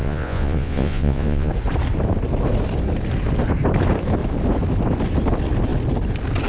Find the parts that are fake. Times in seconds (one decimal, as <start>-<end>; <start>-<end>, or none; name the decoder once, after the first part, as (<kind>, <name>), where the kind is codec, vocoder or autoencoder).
0.0-1.5 (vocoder, Vocos)